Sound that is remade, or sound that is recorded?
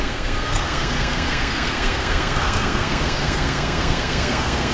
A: remade